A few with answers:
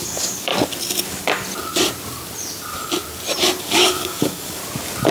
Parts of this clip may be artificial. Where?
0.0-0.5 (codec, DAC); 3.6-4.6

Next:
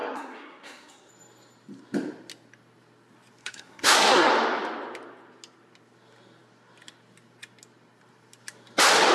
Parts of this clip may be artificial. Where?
0.0-1.1 (codec, SNAC); 3.4-4.3